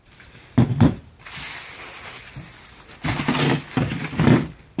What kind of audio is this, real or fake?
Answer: real